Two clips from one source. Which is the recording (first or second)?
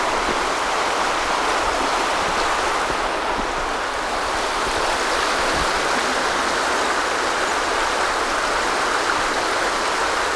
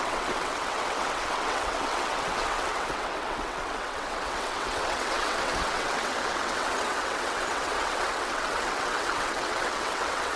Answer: first